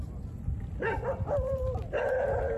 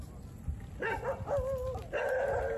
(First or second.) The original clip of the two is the second